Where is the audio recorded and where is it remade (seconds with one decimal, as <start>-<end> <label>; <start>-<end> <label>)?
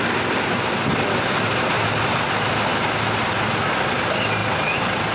0.0-5.1 recorded